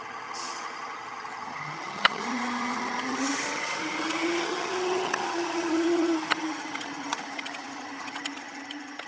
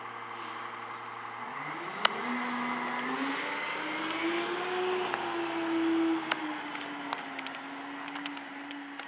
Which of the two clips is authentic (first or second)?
second